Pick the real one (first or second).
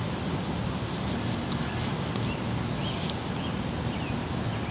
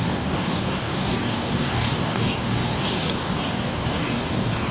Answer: first